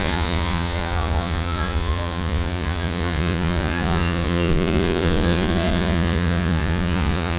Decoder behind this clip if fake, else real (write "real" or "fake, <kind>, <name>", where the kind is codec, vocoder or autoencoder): fake, vocoder, Vocos